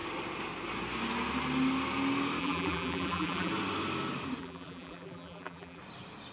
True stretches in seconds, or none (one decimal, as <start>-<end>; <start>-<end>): 0.0-2.4; 3.5-4.4; 5.8-6.3